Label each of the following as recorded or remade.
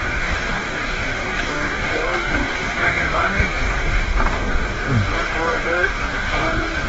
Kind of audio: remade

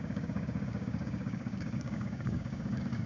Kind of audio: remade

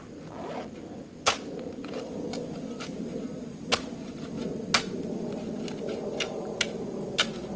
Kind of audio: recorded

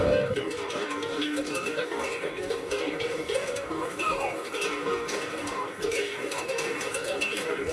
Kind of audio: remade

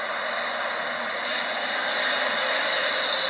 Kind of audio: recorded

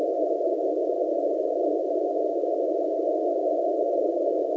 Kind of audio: recorded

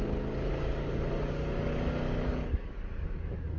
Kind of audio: remade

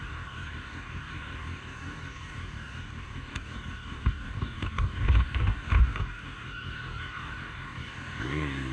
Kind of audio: remade